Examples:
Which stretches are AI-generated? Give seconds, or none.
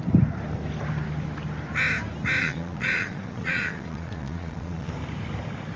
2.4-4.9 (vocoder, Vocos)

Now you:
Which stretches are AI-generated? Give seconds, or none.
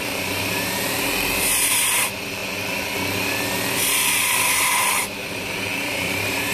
0.0-2.4 (vocoder, BigVGAN v2); 4.5-6.5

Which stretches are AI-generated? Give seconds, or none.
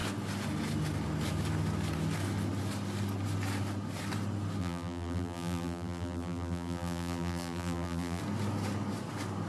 4.6-8.2 (vocoder, BigVGAN v2)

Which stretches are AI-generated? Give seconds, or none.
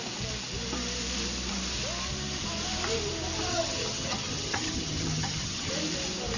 3.5-5.7 (vocoder, HiFi-GAN)